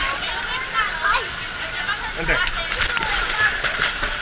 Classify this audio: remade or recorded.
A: recorded